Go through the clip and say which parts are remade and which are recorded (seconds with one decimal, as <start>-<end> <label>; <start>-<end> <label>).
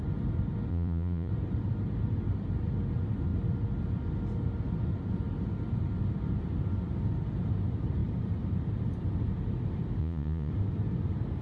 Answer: 0.0-0.7 recorded; 0.7-1.3 remade; 1.3-10.0 recorded; 10.0-10.5 remade; 10.5-11.4 recorded